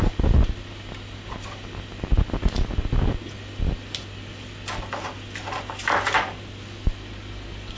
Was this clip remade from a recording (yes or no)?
no